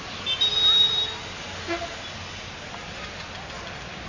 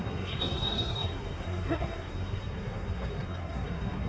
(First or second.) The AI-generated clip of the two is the second